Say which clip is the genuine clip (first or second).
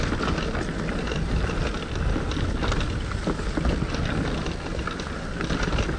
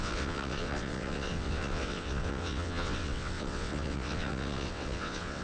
first